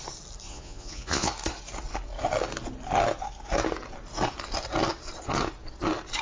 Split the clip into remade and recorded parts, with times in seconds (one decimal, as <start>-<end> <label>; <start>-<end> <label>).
0.0-0.5 recorded; 0.5-1.3 remade; 1.3-6.2 recorded